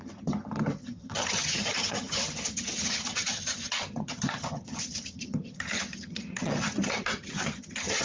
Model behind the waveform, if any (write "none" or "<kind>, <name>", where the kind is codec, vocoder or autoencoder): vocoder, HiFi-GAN